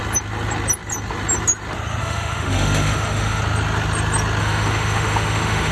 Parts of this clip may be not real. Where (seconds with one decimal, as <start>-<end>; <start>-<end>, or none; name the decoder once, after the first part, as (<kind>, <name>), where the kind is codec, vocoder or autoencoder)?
2.0-3.4 (autoencoder, DAC-VAE); 4.4-5.7